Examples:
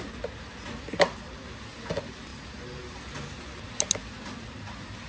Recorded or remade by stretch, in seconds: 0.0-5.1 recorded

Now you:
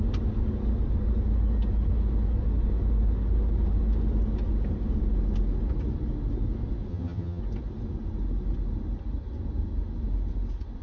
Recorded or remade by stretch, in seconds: 0.0-6.9 recorded; 6.9-7.4 remade; 7.4-10.8 recorded